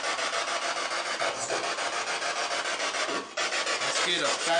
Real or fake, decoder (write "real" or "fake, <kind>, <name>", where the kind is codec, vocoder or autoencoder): real